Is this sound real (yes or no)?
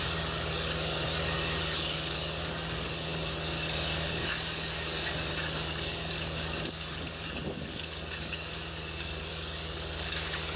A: no